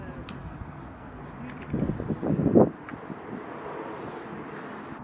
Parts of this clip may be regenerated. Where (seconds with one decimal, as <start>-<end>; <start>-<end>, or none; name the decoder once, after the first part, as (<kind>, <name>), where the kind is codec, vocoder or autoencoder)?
0.4-1.2 (codec, SNAC)